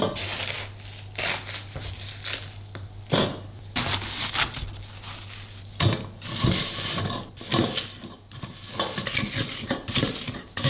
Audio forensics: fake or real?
real